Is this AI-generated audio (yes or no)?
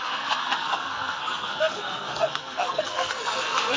yes